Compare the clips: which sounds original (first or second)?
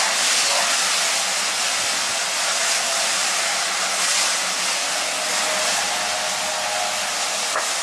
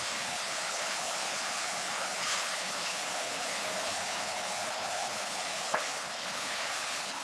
first